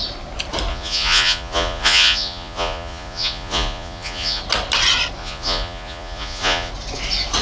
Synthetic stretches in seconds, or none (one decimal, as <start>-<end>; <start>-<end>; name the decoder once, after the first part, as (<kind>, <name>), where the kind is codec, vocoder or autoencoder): 0.7-4.4 (vocoder, Vocos); 5.2-6.7